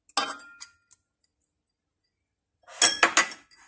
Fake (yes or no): no